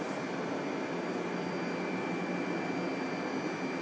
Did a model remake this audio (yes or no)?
no